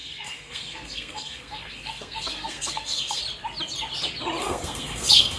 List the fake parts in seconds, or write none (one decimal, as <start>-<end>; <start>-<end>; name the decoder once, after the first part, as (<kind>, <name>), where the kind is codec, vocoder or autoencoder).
0.0-3.2 (codec, SNAC); 4.4-5.4